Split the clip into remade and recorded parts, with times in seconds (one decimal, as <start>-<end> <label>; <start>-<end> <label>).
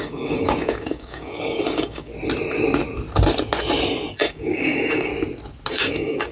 0.0-2.1 remade; 2.1-4.1 recorded; 4.1-5.1 remade; 5.1-5.7 recorded; 5.7-6.3 remade